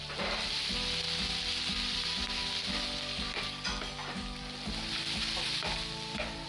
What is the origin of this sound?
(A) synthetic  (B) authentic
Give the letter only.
B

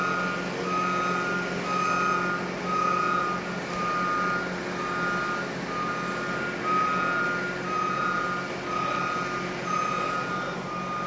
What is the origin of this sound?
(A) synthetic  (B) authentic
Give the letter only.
B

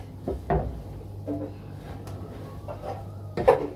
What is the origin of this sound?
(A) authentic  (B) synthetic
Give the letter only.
A